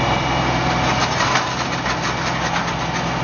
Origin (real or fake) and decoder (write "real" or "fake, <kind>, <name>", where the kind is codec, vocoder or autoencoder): real